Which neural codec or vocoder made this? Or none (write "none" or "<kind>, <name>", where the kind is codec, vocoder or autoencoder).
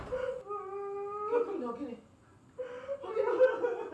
none